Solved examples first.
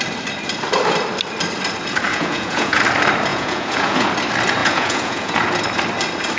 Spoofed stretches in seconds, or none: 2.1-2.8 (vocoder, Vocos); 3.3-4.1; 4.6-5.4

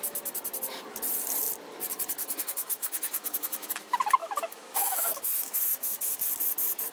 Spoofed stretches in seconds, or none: 2.2-3.7 (autoencoder, DAC-VAE); 4.2-6.3